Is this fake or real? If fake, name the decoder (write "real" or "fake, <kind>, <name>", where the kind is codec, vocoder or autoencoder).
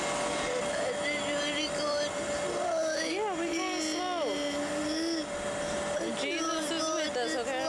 real